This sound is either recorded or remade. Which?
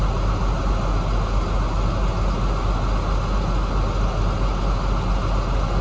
recorded